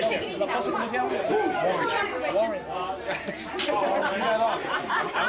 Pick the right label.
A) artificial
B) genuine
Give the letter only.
B